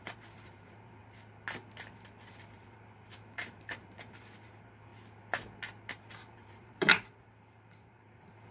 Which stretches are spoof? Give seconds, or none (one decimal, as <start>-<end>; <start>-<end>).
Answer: 0.0-1.0; 2.3-4.9; 6.2-8.5